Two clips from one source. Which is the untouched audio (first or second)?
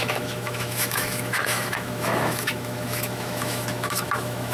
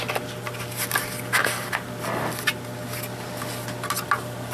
second